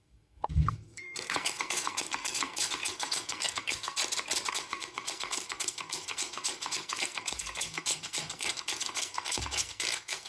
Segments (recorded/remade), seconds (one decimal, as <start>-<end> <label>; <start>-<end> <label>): 0.0-4.0 remade; 4.0-4.5 recorded; 4.5-10.3 remade